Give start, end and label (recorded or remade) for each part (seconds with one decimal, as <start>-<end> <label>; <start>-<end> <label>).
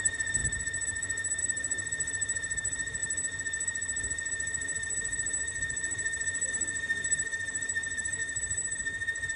0.0-0.4 remade; 0.4-1.4 recorded; 1.4-3.0 remade; 3.0-6.5 recorded; 6.5-8.2 remade; 8.2-9.4 recorded